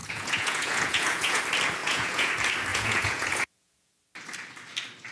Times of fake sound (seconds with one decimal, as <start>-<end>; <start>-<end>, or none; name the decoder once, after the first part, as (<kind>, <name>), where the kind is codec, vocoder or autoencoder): 0.0-1.4 (vocoder, Vocos); 1.8-2.3; 2.7-3.9